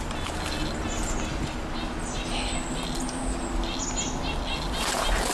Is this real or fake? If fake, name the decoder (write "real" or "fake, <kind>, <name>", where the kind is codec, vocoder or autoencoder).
real